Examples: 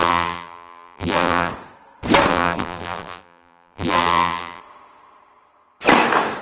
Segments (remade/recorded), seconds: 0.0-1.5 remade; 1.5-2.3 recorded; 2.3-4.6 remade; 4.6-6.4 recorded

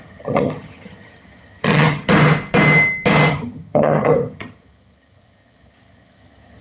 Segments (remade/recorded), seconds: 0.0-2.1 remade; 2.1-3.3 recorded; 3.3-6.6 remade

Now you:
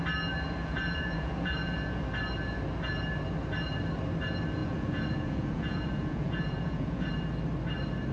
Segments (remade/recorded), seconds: 0.0-0.6 recorded; 0.6-2.0 remade; 2.0-4.6 recorded; 4.6-7.1 remade; 7.1-8.1 recorded

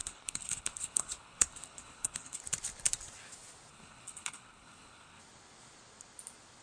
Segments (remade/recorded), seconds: 0.0-2.4 remade; 2.4-3.7 recorded; 3.7-5.2 remade; 5.2-6.6 recorded